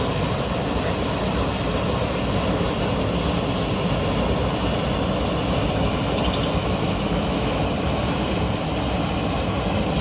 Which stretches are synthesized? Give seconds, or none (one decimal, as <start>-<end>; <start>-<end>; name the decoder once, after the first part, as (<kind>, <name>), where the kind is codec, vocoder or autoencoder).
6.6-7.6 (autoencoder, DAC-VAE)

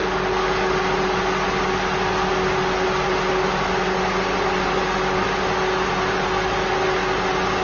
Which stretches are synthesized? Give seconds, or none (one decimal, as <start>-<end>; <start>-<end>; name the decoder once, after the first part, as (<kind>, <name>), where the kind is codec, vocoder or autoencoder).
none

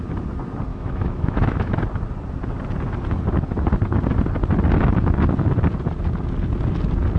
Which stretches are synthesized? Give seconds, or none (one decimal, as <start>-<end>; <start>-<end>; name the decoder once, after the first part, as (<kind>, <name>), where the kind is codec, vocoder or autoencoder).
0.7-1.8 (autoencoder, DAC-VAE)

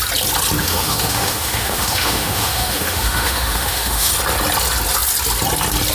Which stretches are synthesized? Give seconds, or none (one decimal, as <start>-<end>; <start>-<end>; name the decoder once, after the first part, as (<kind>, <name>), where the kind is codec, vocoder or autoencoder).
0.6-4.1 (autoencoder, DAC-VAE)

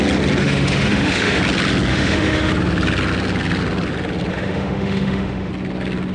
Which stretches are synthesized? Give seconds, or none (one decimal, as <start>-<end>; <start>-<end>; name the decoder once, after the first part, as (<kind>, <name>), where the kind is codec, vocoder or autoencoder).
0.4-1.4 (autoencoder, DAC-VAE); 1.9-2.5; 4.3-5.5